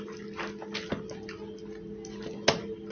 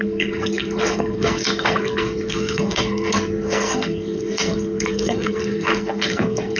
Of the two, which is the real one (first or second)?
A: first